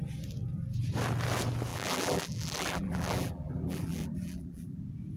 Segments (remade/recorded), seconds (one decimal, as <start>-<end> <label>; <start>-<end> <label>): 0.0-1.7 recorded; 1.7-4.8 remade; 4.8-5.2 recorded